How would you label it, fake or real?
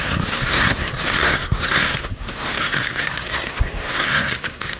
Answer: fake